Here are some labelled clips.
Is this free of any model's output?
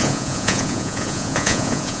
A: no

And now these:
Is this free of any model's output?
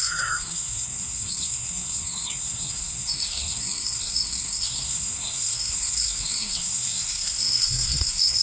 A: no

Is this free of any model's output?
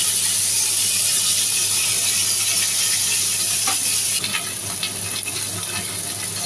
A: yes